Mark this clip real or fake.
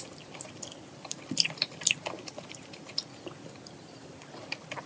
fake